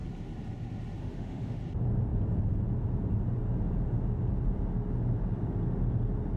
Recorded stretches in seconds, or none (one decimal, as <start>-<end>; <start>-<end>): 0.0-1.0; 1.6-6.4